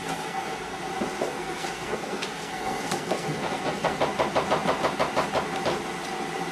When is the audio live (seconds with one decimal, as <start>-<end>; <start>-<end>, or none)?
0.8-1.3; 4.0-6.5